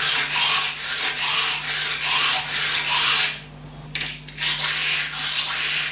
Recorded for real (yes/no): yes